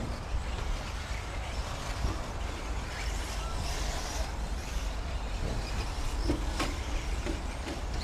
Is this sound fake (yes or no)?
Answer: yes